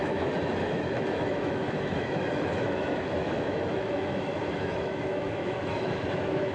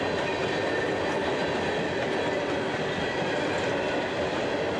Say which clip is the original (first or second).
second